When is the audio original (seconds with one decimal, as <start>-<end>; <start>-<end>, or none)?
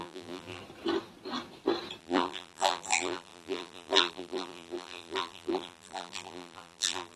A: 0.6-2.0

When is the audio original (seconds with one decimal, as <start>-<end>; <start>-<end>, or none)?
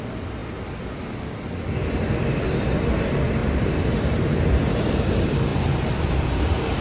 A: 0.0-3.4; 4.4-5.5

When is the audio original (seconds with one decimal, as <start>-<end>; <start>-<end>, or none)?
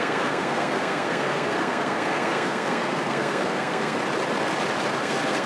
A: 4.0-5.0